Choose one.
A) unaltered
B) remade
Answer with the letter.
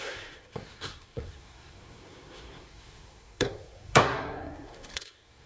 B